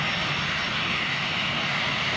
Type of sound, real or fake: real